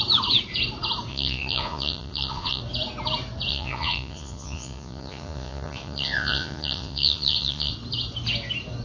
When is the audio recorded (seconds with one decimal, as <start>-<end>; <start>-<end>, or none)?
0.0-1.1; 2.6-3.5; 7.7-8.8